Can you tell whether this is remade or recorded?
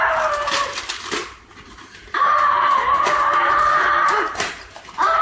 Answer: remade